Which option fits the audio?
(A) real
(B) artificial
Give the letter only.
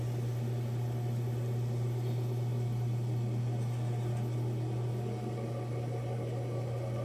A